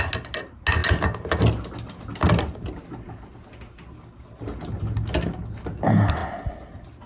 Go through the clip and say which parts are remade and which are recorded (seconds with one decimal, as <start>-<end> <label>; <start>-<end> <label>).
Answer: 0.0-7.1 recorded